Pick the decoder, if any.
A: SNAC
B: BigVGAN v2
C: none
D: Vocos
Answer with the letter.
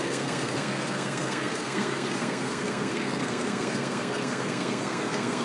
A